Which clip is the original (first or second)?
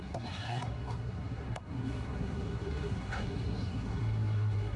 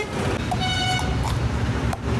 second